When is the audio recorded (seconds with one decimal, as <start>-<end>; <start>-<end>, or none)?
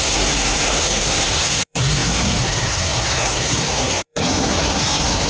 none